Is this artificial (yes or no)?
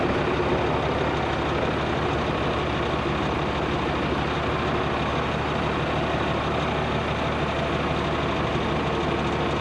no